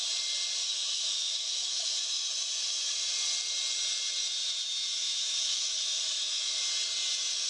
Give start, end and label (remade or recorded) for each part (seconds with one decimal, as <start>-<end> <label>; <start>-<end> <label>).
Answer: 0.0-0.7 recorded; 0.7-2.3 remade; 2.3-4.4 recorded; 4.4-6.6 remade; 6.6-7.5 recorded